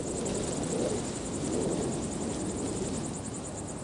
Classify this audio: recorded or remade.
recorded